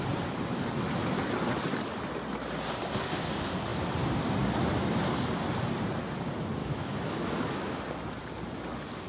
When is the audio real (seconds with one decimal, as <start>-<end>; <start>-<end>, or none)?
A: 0.0-6.6; 7.8-9.1